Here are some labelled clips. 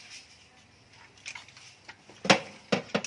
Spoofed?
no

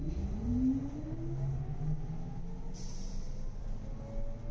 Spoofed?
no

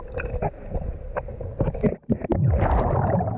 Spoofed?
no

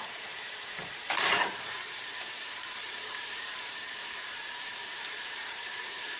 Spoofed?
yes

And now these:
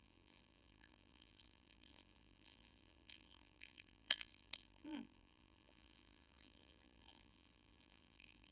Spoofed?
yes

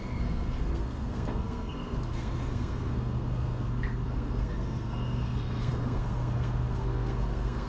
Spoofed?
yes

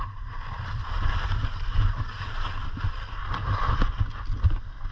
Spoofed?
no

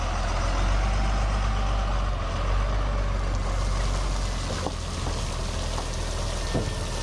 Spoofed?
no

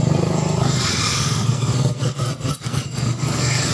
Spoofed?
yes